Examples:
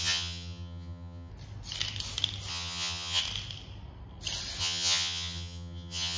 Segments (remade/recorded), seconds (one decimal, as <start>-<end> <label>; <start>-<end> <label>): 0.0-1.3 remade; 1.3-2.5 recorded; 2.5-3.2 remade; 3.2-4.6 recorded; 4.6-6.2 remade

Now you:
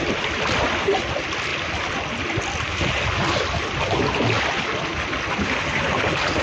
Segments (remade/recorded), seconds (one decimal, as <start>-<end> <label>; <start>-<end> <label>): 0.0-6.4 recorded

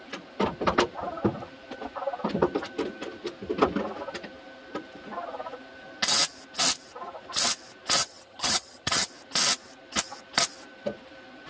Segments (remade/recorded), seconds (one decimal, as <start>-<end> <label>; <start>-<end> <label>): 0.0-8.0 recorded; 8.0-9.1 remade; 9.1-11.5 recorded

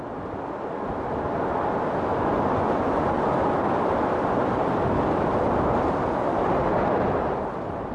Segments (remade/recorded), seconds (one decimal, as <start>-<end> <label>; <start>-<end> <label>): 0.0-2.1 recorded; 2.1-3.2 remade; 3.2-7.9 recorded

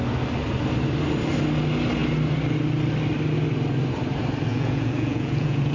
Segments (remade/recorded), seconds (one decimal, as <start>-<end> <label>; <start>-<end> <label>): 0.0-4.5 recorded; 4.5-5.7 remade